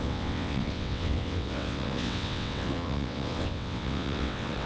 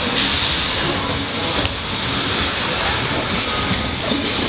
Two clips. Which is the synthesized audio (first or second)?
first